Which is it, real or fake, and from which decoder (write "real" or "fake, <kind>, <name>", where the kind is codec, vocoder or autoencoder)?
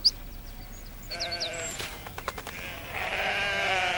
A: real